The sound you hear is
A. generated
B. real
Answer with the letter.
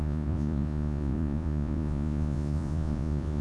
A